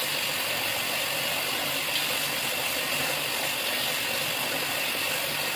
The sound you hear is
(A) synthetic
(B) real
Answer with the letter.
B